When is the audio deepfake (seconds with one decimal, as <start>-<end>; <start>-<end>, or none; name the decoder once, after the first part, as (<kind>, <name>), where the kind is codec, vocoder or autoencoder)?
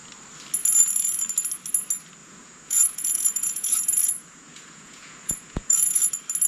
2.2-6.1 (vocoder, Vocos)